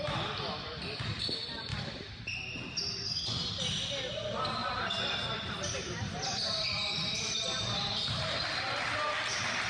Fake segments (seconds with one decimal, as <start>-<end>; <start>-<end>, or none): 1.7-2.4; 4.6-8.1